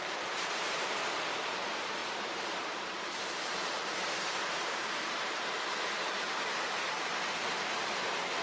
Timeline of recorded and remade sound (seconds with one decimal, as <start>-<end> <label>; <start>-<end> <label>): 0.0-8.4 remade